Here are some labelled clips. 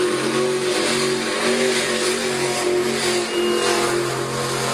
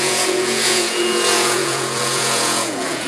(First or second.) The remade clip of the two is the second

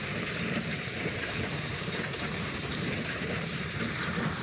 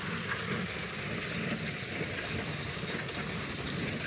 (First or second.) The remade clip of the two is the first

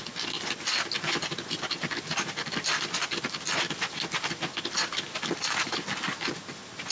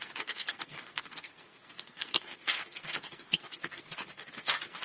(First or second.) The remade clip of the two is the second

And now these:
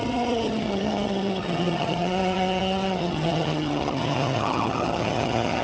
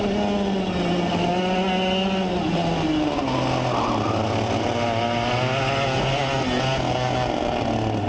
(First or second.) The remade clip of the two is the first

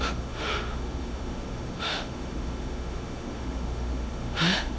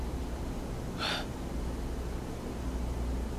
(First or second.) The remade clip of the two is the first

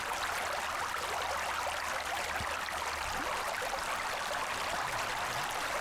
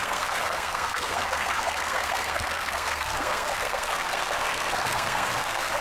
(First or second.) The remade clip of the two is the second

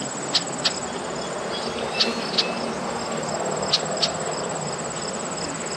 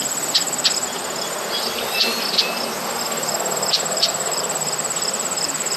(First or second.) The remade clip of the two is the second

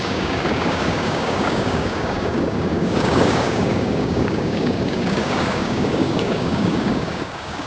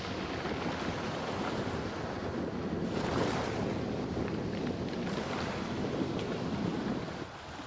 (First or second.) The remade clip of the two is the first